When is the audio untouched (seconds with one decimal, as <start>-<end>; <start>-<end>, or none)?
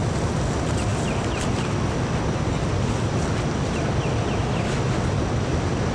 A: 0.0-5.9